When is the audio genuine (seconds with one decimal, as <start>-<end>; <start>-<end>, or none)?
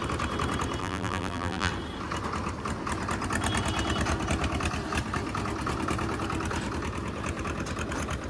0.0-0.8; 1.7-8.3